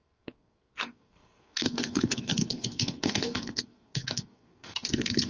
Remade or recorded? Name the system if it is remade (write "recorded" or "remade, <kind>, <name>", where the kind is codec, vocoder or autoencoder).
remade, codec, SNAC